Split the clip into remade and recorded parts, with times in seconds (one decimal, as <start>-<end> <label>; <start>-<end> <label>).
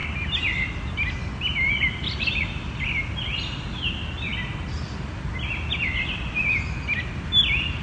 0.0-7.8 recorded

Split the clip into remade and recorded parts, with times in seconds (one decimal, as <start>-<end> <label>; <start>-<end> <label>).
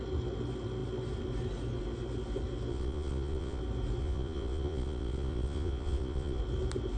0.0-2.7 recorded; 2.7-3.6 remade; 3.6-4.0 recorded; 4.0-6.4 remade; 6.4-7.0 recorded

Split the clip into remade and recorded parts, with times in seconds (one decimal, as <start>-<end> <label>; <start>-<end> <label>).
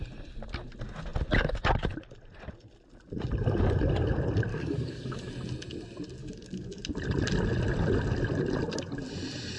0.0-4.5 recorded; 4.5-5.3 remade; 5.3-6.2 recorded; 6.2-6.8 remade; 6.8-9.6 recorded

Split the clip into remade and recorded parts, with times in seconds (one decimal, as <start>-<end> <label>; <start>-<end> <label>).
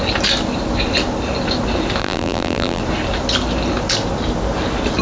0.0-2.0 recorded; 2.0-2.8 remade; 2.8-5.0 recorded